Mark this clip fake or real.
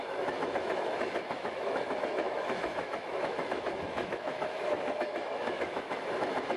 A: fake